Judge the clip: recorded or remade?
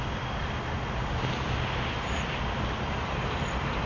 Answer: recorded